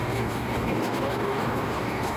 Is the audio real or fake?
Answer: fake